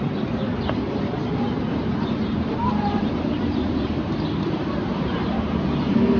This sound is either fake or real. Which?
fake